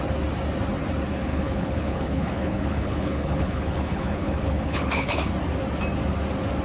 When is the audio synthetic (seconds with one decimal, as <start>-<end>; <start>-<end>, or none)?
1.3-5.3